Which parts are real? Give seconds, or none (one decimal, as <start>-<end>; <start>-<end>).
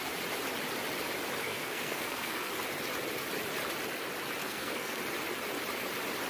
0.0-1.4; 2.5-4.4; 5.0-6.3